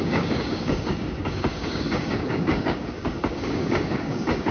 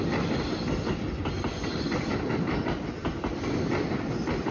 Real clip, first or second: second